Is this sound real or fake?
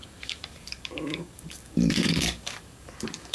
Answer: fake